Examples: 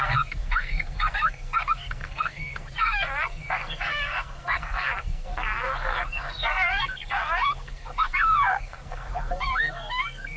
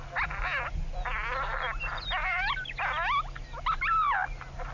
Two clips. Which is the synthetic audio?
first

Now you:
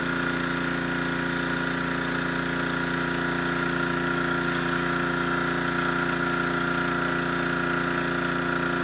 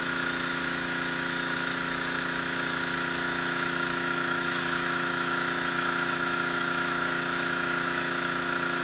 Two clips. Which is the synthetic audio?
second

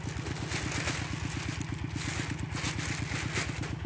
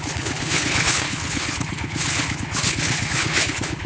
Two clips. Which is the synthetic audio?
second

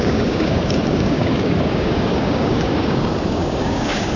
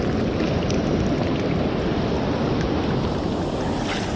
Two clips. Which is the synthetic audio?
first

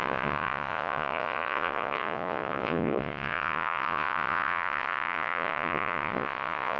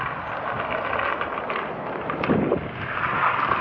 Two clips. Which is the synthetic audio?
first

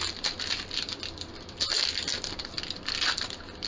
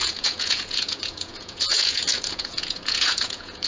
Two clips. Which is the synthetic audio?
second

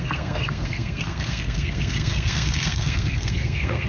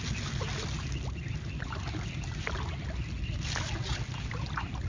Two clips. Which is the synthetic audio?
first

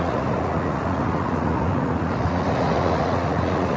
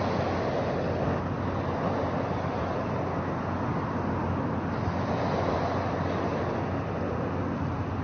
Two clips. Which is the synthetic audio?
first